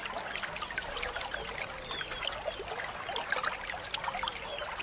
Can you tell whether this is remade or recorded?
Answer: recorded